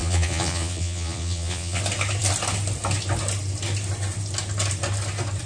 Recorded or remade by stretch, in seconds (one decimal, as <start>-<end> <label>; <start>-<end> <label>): 0.0-1.8 remade; 1.8-5.5 recorded

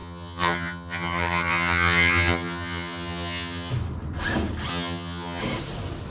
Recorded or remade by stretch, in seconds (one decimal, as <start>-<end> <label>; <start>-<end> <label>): 0.0-3.7 remade; 3.7-4.7 recorded; 4.7-5.4 remade; 5.4-6.1 recorded

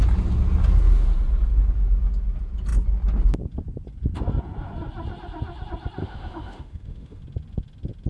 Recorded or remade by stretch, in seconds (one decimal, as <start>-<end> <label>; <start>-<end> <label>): 0.0-6.0 recorded; 6.0-7.2 remade; 7.2-8.1 recorded

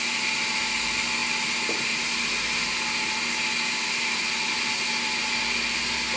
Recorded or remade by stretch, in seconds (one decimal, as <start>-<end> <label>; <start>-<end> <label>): 0.0-6.2 recorded

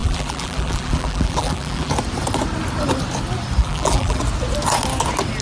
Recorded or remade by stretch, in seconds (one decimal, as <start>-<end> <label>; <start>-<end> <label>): 0.0-1.9 remade; 1.9-3.6 recorded; 3.6-4.2 remade; 4.2-5.4 recorded

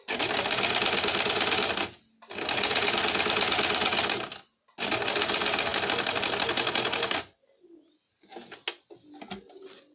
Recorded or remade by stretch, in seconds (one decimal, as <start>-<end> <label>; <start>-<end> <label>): 0.0-9.9 recorded

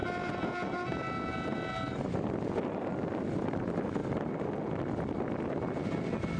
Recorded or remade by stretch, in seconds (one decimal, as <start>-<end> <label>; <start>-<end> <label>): 0.0-6.4 recorded